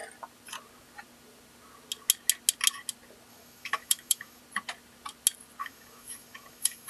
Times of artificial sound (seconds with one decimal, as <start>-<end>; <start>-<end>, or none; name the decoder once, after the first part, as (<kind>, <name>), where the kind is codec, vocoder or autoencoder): 3.3-4.4 (autoencoder, DAC-VAE); 5.6-6.9